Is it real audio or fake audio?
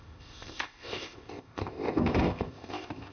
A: fake